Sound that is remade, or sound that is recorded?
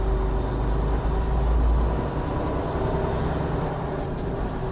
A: recorded